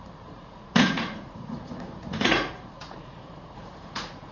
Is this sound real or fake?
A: fake